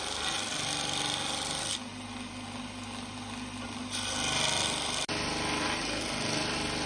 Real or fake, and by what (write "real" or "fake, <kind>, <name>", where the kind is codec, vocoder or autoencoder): real